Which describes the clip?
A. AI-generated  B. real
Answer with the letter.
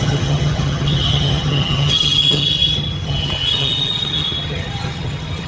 A